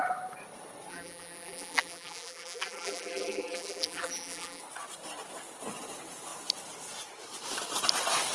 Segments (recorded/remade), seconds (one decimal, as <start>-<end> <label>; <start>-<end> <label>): 0.0-0.9 recorded; 0.9-4.6 remade; 4.6-8.3 recorded